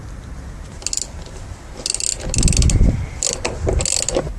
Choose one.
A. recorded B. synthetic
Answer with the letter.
A